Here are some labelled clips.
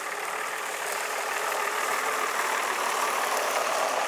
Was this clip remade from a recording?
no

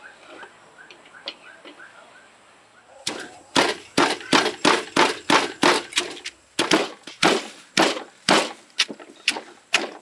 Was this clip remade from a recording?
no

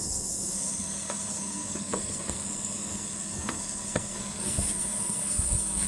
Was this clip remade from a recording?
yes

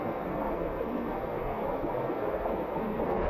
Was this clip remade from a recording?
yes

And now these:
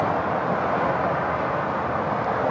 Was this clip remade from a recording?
no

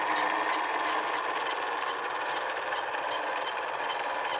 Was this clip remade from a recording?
no